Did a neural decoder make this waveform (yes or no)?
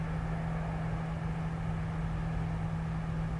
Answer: no